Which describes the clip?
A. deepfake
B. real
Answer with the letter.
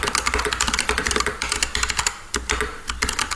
B